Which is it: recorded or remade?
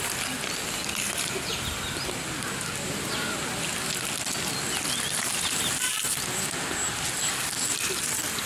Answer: recorded